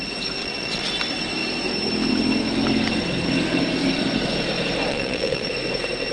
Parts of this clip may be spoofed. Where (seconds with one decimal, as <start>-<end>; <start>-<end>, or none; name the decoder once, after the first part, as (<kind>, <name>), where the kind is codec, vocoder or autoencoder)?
0.4-0.9 (vocoder, Vocos); 4.9-5.5